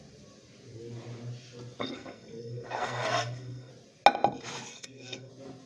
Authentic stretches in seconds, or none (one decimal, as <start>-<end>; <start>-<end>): 0.0-1.8; 3.7-4.7; 5.3-5.7